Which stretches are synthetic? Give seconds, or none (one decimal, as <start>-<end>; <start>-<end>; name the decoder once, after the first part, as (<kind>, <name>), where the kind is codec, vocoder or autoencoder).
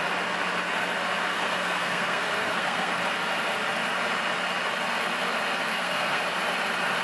1.3-3.0 (codec, SNAC); 5.7-6.2